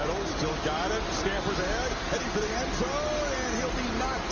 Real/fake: real